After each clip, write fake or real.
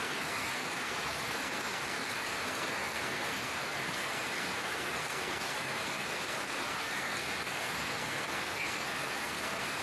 fake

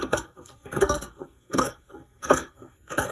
fake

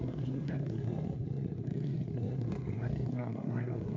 fake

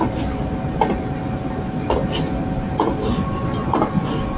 real